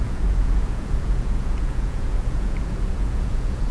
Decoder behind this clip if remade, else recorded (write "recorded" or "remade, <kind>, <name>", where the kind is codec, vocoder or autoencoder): remade, vocoder, Vocos